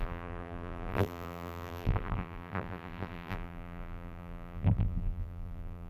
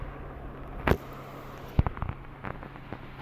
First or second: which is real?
second